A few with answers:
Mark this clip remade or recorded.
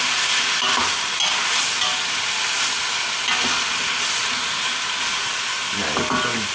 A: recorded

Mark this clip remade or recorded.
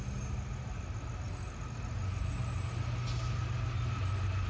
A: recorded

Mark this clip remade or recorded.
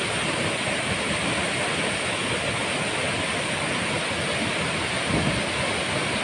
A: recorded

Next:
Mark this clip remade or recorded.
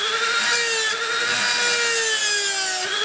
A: recorded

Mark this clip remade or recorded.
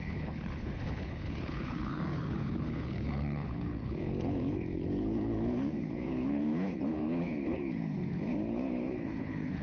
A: remade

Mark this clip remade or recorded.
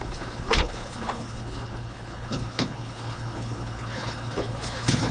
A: remade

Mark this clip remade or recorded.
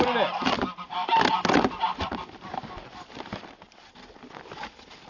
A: recorded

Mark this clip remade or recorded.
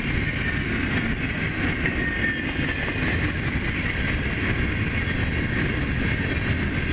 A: recorded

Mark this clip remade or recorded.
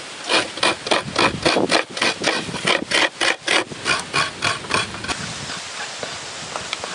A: recorded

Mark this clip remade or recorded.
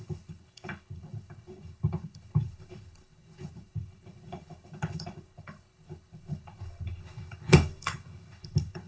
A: remade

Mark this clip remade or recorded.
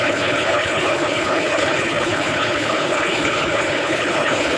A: remade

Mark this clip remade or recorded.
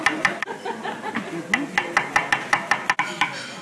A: recorded